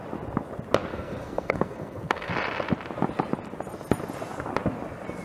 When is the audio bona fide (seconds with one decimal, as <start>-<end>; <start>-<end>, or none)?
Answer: 0.0-0.9; 2.3-5.2

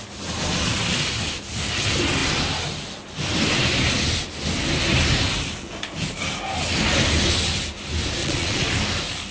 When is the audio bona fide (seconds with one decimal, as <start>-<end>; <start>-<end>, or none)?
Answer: 0.0-8.2; 8.7-9.3

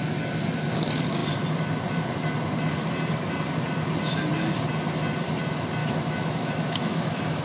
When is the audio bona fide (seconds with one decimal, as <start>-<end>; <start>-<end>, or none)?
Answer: 0.0-5.8

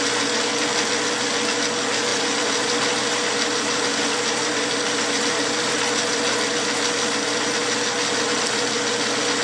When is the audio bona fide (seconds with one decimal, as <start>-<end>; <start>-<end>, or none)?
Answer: 0.0-2.1; 5.2-9.4

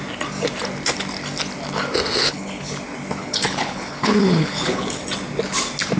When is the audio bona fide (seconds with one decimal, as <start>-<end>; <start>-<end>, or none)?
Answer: 0.0-2.2; 2.7-3.2; 5.0-6.0